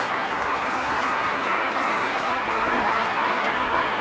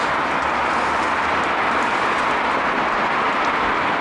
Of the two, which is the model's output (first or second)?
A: first